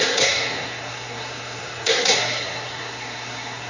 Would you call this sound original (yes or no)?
no